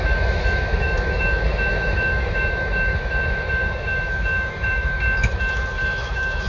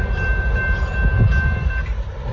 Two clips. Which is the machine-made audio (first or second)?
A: first